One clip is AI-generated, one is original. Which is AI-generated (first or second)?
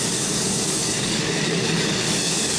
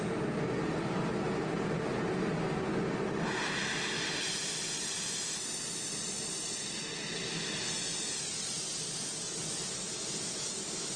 first